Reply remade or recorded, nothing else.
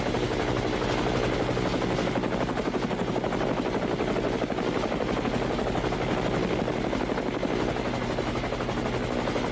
recorded